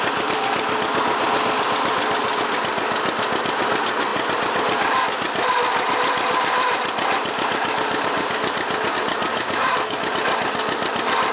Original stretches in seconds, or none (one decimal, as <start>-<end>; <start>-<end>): 0.0-9.3; 10.1-11.3